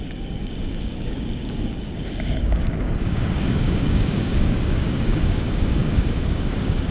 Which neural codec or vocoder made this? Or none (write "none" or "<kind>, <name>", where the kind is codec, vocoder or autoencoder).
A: codec, DAC